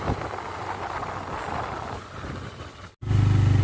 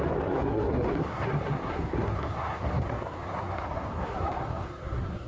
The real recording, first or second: first